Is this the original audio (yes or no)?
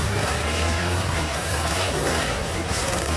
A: no